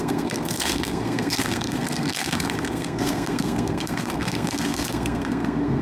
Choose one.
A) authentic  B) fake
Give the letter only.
B